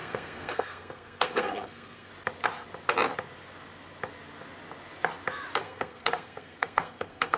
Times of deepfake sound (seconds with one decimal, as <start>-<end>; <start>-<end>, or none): 0.0-2.1; 5.6-7.4